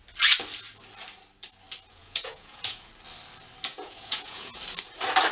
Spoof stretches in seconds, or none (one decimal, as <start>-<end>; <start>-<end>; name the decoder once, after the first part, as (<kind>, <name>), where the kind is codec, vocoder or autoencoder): 1.9-2.9 (vocoder, Vocos); 3.7-4.6